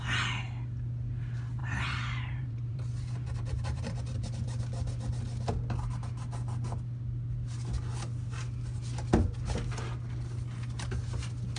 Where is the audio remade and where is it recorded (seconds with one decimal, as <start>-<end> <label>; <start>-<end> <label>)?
0.0-1.6 recorded; 1.6-4.6 remade; 4.6-11.6 recorded

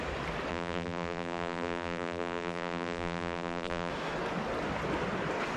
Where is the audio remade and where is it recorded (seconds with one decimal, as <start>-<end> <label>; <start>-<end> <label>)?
0.0-0.5 recorded; 0.5-3.9 remade; 3.9-5.6 recorded

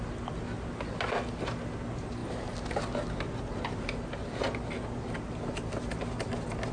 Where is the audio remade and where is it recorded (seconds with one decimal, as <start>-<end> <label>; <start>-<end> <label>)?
0.0-6.7 recorded

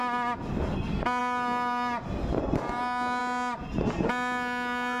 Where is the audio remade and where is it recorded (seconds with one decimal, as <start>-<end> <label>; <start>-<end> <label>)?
0.0-5.0 recorded